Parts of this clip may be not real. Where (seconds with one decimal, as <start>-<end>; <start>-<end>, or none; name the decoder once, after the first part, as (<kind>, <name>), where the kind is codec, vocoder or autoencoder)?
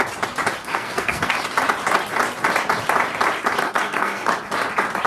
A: 0.6-1.3 (codec, SNAC); 3.6-4.3